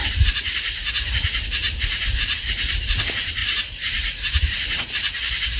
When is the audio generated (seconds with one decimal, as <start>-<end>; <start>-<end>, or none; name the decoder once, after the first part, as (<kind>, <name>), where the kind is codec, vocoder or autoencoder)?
0.0-0.9 (vocoder, BigVGAN v2); 1.6-3.0; 3.4-4.8